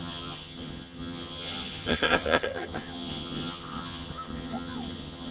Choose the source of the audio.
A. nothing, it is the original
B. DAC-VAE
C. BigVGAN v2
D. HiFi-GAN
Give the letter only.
D